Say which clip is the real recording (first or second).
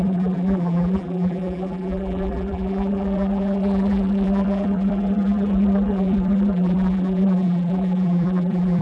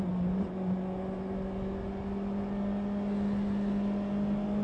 second